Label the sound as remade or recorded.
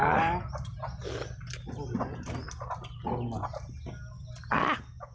recorded